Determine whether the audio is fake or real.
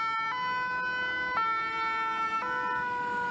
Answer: real